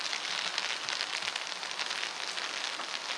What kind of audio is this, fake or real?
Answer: real